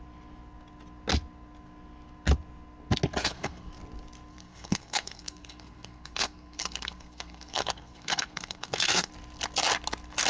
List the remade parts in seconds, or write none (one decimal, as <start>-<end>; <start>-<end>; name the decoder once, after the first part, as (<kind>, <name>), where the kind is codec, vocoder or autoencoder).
3.2-3.7 (codec, SNAC); 4.3-9.1